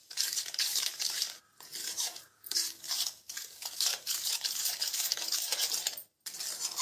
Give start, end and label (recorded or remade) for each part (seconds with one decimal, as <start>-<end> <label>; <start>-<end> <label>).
0.0-1.4 remade; 1.4-1.8 recorded; 1.8-5.7 remade; 5.7-6.8 recorded